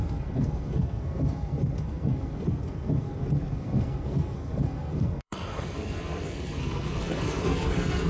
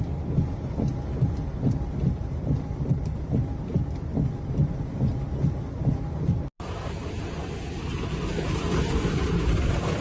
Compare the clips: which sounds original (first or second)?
second